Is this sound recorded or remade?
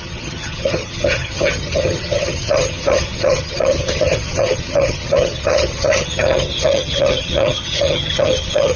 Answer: remade